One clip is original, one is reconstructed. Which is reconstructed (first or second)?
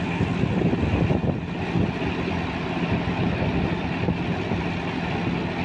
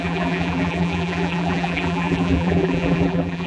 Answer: second